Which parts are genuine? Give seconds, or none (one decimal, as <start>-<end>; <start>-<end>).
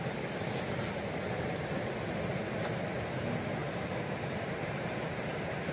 0.0-5.7